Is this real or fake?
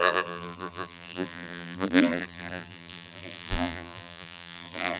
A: fake